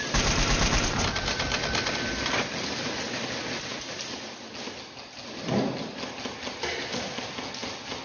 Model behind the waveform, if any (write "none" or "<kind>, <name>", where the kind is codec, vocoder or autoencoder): none